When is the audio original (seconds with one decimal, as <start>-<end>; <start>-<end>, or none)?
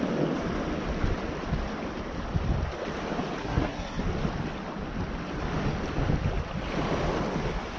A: 0.0-3.4; 4.0-7.8